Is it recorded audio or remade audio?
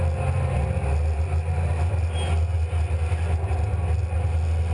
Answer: recorded